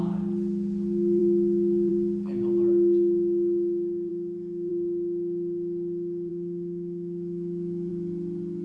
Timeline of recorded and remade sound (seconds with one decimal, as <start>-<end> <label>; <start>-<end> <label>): 0.0-4.1 recorded; 4.1-4.7 remade; 4.7-6.3 recorded; 6.3-7.9 remade; 7.9-8.6 recorded